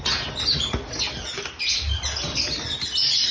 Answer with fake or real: real